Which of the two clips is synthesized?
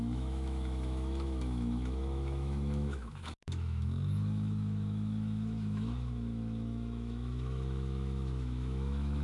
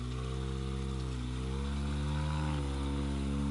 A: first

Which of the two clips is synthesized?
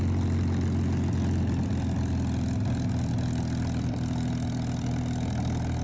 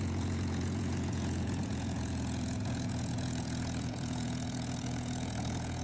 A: second